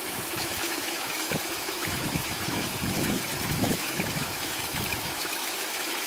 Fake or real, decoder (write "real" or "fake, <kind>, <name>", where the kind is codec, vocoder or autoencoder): fake, autoencoder, DAC-VAE